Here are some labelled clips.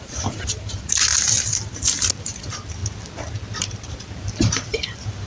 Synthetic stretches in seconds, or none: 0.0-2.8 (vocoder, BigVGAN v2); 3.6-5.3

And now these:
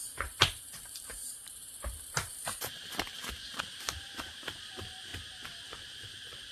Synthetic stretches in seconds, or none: 0.0-3.6 (vocoder, BigVGAN v2)

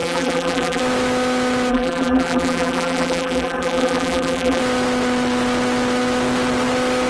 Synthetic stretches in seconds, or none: 0.0-0.8 (vocoder, BigVGAN v2); 1.7-4.6